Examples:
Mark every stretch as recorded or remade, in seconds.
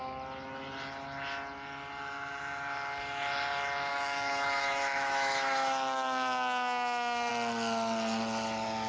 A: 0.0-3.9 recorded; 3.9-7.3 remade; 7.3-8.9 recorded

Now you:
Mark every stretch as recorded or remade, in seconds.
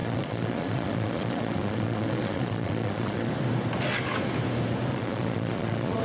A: 0.0-3.3 remade; 3.3-4.9 recorded; 4.9-6.0 remade